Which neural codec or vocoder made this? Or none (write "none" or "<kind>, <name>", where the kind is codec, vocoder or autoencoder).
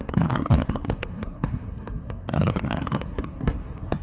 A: codec, SNAC